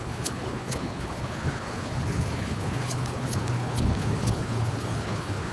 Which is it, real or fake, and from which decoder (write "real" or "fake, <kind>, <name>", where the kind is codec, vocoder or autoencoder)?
fake, codec, HILCodec